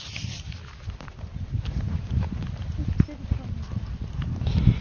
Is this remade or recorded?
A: recorded